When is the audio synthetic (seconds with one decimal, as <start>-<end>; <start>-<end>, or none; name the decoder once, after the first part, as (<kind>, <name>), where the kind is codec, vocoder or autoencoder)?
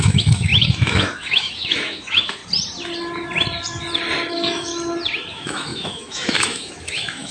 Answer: 0.0-2.4 (autoencoder, DAC-VAE); 4.3-4.7; 5.3-7.3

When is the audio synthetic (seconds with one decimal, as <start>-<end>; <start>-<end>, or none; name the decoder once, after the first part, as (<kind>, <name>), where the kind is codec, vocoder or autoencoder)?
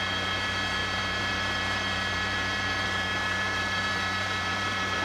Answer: 0.0-5.0 (vocoder, BigVGAN v2)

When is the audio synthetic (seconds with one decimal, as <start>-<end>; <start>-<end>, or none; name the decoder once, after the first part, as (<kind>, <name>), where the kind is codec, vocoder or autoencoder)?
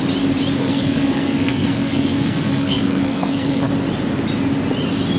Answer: 0.6-3.7 (codec, SNAC)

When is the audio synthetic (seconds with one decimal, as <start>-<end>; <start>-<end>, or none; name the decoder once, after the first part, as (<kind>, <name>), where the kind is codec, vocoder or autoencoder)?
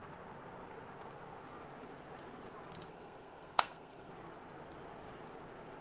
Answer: 2.9-4.1 (codec, SNAC)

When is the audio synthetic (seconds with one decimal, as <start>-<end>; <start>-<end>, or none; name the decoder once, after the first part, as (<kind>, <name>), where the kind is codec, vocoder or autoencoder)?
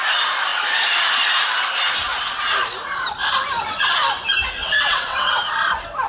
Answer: 4.6-5.3 (vocoder, WaveNeXt)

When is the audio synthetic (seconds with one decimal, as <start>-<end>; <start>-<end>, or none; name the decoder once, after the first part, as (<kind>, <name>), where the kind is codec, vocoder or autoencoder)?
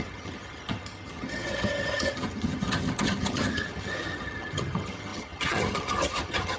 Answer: 0.0-6.6 (vocoder, HiFi-GAN)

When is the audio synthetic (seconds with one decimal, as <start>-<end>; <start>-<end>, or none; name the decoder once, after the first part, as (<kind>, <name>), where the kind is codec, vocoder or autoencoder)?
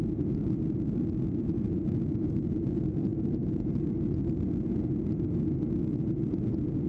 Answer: none